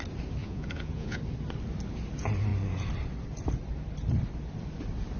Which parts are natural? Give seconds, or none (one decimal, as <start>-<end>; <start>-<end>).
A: 0.0-0.4; 1.2-5.2